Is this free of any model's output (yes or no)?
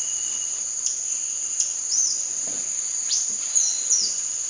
yes